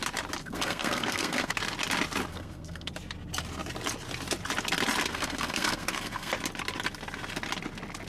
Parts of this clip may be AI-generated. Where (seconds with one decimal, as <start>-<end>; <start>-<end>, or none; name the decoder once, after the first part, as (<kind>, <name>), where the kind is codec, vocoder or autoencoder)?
0.4-1.5 (codec, SNAC); 2.3-2.9; 5.1-6.3